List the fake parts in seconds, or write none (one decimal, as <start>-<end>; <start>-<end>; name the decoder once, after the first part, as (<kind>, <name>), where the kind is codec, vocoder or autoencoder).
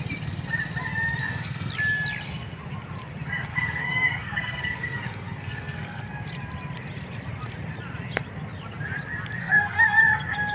1.2-1.7 (codec, SNAC); 3.5-6.1; 9.4-10.0